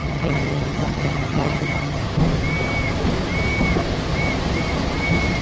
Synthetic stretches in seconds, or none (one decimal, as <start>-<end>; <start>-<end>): 0.0-2.0